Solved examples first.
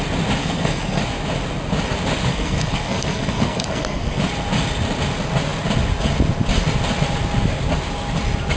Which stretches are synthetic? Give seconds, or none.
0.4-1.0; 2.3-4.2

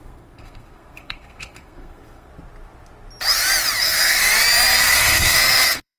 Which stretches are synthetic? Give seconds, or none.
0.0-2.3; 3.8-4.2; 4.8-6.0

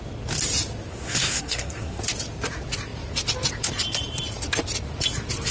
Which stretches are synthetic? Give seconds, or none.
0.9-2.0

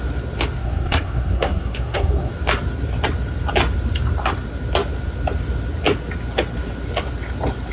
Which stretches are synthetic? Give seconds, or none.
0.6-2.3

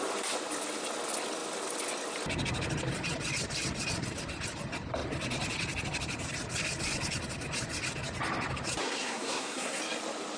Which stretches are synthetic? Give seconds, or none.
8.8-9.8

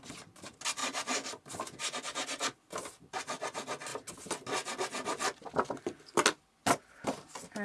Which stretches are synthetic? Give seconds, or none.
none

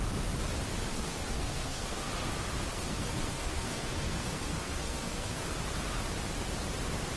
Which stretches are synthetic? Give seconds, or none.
0.9-2.1; 2.7-5.5

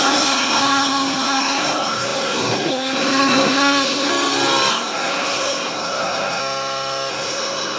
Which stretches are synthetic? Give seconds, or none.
0.0-4.1; 4.7-6.4; 7.1-7.8